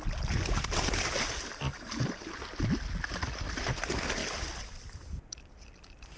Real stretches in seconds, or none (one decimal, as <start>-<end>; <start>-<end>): 0.0-6.2